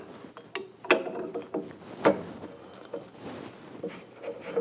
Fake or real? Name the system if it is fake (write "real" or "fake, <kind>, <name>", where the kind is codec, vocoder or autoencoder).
real